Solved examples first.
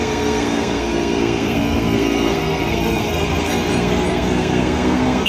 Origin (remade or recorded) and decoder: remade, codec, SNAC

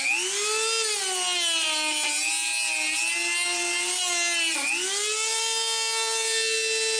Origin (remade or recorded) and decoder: recorded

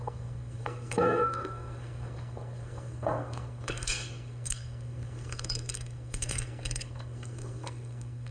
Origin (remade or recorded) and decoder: remade, codec, SNAC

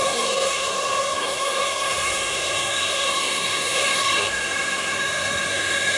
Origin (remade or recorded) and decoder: remade, codec, SNAC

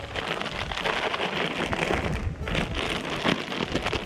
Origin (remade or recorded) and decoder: recorded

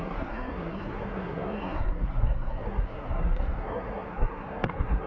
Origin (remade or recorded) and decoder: remade, codec, SNAC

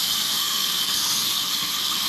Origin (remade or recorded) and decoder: remade, codec, SNAC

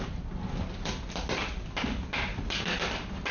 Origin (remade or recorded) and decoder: recorded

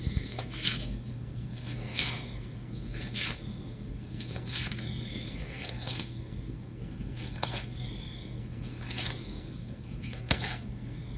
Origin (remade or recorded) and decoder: remade, codec, SNAC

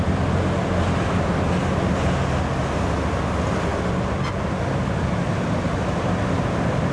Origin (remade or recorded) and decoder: recorded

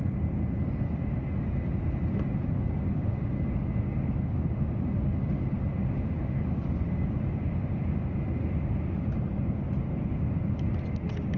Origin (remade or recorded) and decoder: recorded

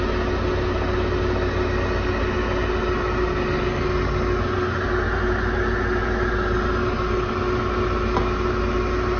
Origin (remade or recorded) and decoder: recorded